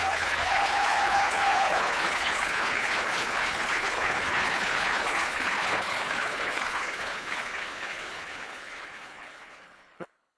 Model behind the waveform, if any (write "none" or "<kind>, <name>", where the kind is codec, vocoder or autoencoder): codec, HILCodec